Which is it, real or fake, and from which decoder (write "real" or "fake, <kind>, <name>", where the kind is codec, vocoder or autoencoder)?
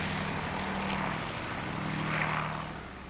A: real